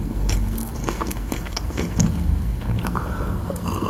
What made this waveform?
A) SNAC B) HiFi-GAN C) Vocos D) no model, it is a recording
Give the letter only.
A